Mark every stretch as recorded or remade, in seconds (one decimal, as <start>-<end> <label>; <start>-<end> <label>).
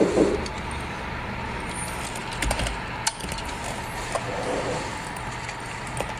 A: 0.0-6.2 recorded